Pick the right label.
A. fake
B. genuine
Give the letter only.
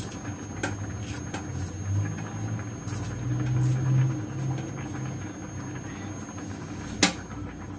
B